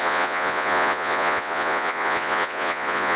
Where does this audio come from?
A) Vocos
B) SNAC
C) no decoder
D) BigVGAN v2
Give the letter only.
A